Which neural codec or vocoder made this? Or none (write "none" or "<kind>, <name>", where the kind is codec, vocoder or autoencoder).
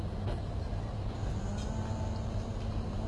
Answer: none